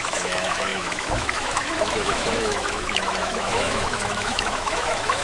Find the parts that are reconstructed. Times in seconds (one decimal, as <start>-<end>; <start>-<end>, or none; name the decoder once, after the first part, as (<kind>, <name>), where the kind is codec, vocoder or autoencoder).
0.0-5.2 (autoencoder, DAC-VAE)